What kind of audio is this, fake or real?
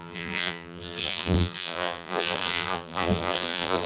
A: fake